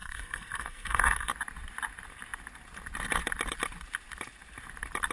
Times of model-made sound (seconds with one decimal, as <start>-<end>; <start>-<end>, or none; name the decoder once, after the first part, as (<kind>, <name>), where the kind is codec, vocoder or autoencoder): 0.0-1.3 (codec, SNAC)